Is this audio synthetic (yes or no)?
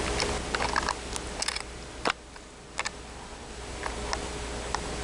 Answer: no